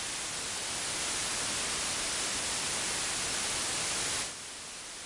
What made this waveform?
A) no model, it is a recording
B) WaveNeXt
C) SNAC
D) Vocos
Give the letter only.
A